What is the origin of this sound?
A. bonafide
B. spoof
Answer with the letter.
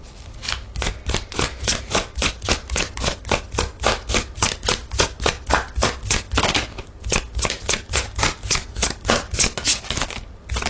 A